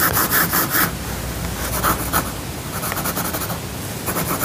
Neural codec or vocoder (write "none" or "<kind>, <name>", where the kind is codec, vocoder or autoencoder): none